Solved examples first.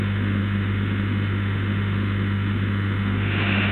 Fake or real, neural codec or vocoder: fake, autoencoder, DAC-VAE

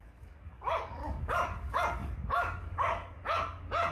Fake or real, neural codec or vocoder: fake, codec, DAC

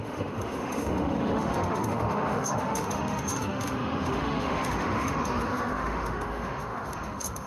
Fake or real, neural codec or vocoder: fake, autoencoder, DAC-VAE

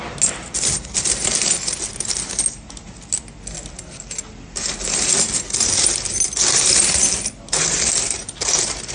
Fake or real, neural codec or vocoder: real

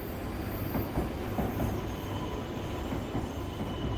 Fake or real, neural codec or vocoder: real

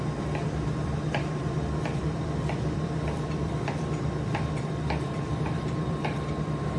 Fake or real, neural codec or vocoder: fake, vocoder, BigVGAN v2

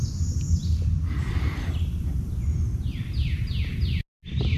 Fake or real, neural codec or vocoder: real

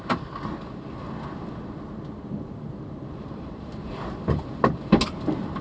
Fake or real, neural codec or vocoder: real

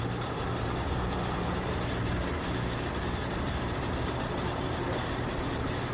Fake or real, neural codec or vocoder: fake, vocoder, BigVGAN v2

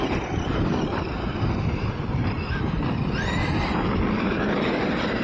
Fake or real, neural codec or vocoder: fake, vocoder, BigVGAN v2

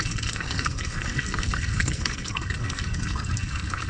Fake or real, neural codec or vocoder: fake, codec, SNAC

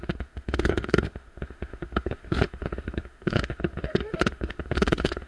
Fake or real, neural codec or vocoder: fake, autoencoder, DAC-VAE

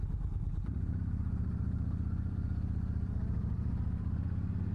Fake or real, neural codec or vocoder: fake, vocoder, BigVGAN v2